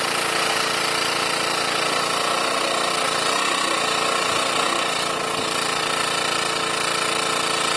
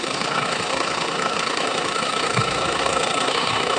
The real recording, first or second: first